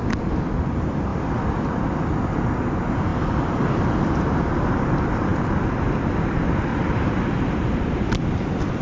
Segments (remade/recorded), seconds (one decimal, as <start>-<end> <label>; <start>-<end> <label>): 0.0-3.1 recorded; 3.1-4.0 remade; 4.0-6.7 recorded; 6.7-8.1 remade; 8.1-8.8 recorded